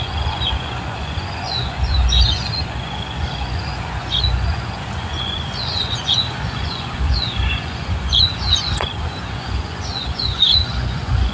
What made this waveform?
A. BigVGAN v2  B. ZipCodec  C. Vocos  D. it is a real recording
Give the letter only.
C